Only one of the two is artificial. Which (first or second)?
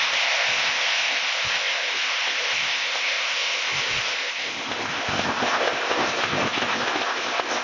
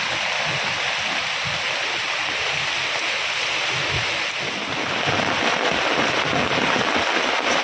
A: first